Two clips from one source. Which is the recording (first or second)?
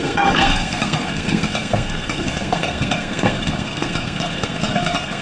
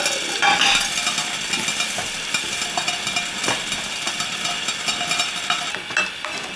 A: second